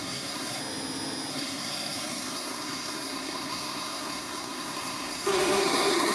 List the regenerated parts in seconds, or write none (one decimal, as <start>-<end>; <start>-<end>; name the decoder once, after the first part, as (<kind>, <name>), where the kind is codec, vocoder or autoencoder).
0.0-0.6 (codec, SNAC); 1.3-6.1